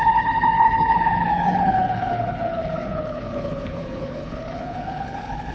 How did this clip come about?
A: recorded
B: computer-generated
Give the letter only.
B